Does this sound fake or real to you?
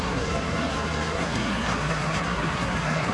fake